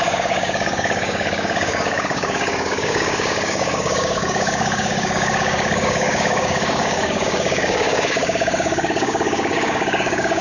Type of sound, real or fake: fake